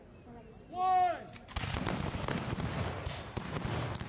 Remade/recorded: recorded